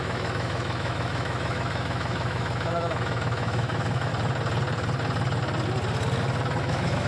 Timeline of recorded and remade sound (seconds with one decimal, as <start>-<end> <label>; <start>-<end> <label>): 0.0-4.1 remade; 4.1-6.6 recorded; 6.6-7.1 remade